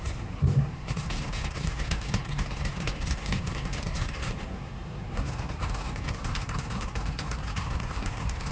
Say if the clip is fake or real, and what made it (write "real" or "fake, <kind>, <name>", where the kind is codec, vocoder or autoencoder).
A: fake, codec, SNAC